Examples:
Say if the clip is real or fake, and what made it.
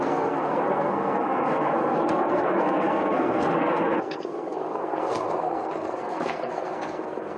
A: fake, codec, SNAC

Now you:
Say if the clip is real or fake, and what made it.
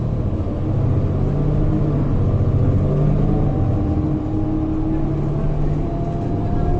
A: real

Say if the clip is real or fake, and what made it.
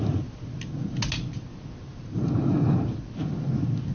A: real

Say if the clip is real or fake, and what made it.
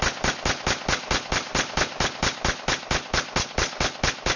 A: real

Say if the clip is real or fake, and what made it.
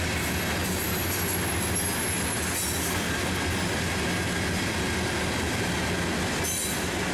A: real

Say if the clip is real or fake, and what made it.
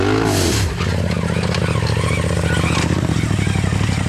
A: real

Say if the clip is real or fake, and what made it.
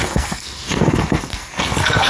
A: fake, codec, SNAC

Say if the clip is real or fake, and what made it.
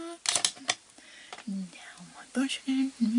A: real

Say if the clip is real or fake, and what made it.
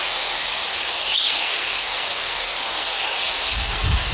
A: fake, codec, SNAC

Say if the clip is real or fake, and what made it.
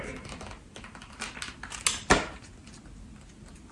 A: real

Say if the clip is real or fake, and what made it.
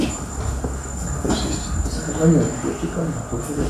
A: real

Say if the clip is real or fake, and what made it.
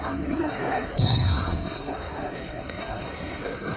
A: fake, codec, SNAC